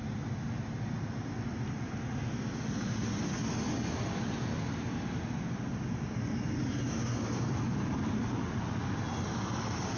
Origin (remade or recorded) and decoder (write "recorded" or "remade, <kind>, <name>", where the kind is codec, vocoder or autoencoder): recorded